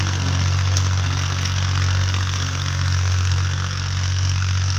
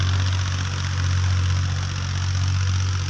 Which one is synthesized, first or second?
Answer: first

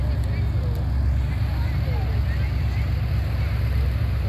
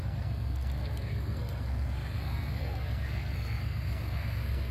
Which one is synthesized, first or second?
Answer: second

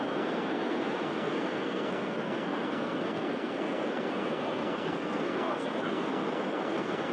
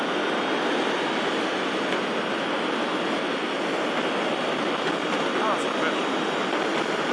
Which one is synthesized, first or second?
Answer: first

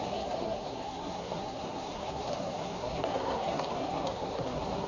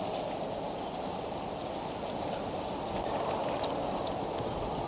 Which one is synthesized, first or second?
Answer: first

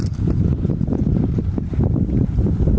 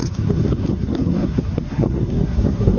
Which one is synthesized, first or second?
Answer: second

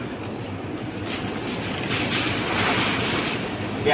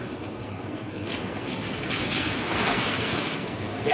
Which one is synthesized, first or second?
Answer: second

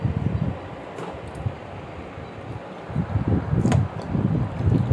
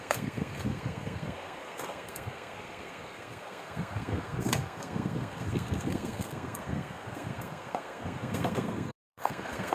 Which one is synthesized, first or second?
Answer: second